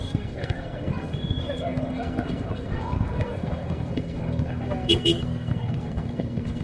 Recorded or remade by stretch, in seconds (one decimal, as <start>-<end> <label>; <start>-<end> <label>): 0.0-6.6 remade